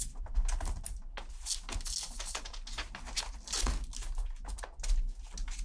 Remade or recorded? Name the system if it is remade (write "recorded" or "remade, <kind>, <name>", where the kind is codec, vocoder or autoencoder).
recorded